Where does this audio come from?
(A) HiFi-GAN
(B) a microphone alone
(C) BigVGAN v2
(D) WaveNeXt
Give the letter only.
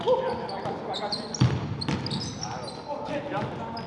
B